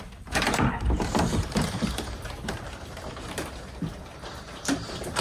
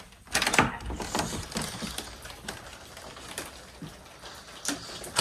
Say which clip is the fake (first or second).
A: first